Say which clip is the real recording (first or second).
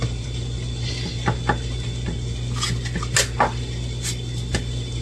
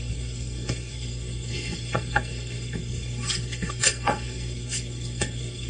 first